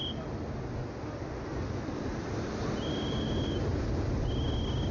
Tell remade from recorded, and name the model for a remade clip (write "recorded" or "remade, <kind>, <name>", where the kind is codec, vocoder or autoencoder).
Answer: recorded